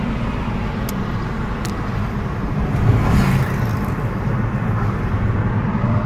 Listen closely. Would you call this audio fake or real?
real